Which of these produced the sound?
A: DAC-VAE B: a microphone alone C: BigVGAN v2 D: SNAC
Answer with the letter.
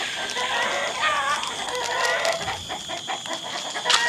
B